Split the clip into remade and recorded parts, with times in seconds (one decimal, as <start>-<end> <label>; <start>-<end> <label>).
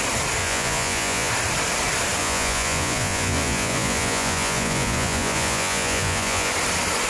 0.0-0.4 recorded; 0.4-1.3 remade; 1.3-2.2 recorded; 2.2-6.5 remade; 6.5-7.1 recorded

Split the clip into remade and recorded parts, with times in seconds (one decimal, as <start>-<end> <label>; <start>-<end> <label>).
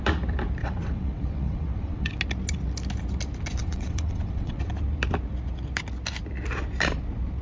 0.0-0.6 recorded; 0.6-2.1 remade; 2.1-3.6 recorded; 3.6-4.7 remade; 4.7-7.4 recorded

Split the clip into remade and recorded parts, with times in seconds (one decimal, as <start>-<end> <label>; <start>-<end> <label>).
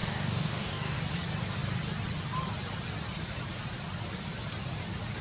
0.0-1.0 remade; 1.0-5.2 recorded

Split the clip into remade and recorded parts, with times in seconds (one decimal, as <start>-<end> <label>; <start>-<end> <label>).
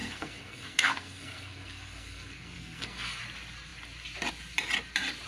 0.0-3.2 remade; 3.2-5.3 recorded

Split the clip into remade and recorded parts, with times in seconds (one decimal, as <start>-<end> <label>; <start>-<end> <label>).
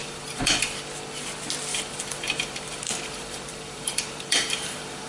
0.0-0.5 remade; 0.5-1.7 recorded; 1.7-5.1 remade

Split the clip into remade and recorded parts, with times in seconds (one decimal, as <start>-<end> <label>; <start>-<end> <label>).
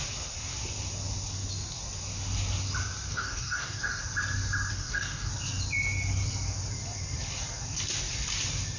0.0-3.1 recorded; 3.1-4.0 remade; 4.0-4.7 recorded; 4.7-5.3 remade; 5.3-8.8 recorded